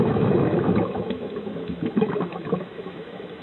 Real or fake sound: fake